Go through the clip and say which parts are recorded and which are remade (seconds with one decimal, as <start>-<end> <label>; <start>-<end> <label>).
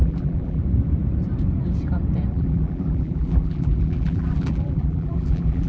0.0-0.6 remade; 0.6-2.3 recorded; 2.3-5.7 remade